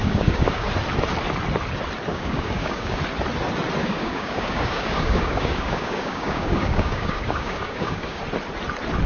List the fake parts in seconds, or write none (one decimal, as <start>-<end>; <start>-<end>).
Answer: 0.0-0.7; 2.1-3.0; 3.8-8.2